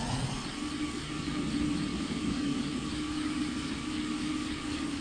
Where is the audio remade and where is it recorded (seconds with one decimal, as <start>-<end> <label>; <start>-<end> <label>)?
0.0-0.8 recorded; 0.8-1.4 remade; 1.4-1.9 recorded; 1.9-5.0 remade